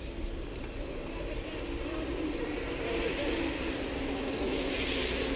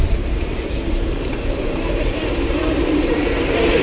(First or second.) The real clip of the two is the first